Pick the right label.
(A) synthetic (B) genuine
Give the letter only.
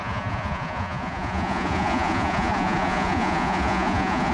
A